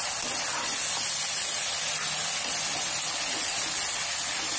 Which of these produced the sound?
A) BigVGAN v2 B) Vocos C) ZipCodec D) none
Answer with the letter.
D